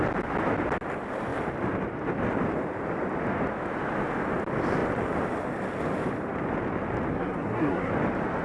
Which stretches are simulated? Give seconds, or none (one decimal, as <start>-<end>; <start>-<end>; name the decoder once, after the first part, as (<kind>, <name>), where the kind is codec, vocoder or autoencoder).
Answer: 7.1-7.9 (codec, SNAC)